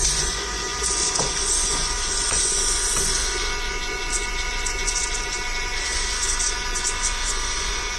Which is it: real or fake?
fake